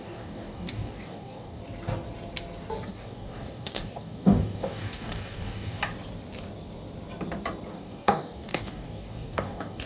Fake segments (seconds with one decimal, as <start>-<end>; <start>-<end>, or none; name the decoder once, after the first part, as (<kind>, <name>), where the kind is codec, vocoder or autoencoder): 0.0-1.6 (codec, DAC); 2.9-5.8; 7.7-9.9